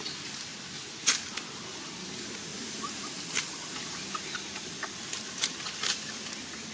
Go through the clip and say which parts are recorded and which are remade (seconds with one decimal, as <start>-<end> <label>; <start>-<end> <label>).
0.0-2.5 recorded; 2.5-6.2 remade; 6.2-6.7 recorded